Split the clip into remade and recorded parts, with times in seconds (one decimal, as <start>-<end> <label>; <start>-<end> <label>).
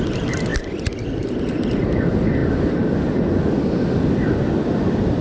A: 0.0-5.2 recorded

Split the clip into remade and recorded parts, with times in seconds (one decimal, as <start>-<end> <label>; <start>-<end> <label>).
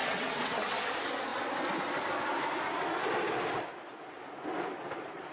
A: 0.0-0.9 remade; 0.9-5.3 recorded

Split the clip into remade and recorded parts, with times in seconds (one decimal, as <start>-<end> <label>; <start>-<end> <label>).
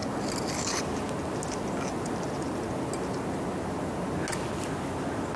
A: 0.0-5.4 recorded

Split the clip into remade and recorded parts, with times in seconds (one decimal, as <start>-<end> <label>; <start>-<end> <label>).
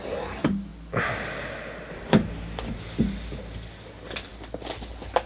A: 0.0-5.3 recorded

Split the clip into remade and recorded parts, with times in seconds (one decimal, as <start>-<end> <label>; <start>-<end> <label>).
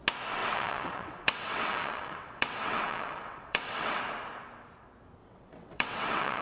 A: 0.0-0.4 recorded; 0.4-4.0 remade; 4.0-5.2 recorded; 5.2-6.4 remade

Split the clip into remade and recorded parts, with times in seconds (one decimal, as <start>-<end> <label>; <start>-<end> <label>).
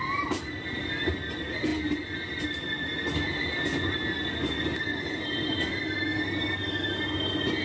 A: 0.0-7.6 recorded